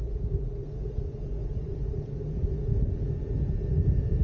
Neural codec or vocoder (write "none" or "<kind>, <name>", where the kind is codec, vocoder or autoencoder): vocoder, Vocos